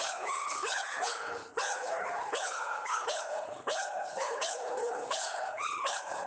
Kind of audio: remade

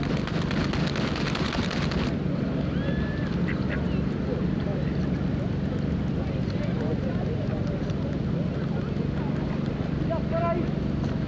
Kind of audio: recorded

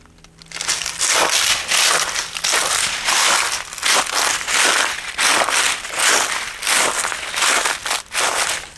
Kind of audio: recorded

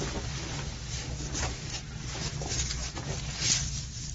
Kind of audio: recorded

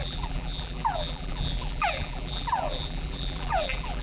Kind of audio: remade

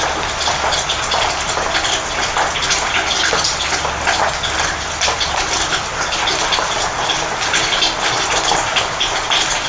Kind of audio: recorded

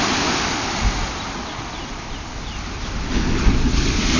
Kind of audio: recorded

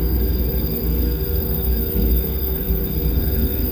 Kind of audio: remade